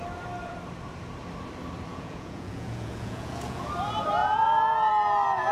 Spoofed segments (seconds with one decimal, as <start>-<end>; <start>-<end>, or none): 1.9-3.7; 4.2-4.9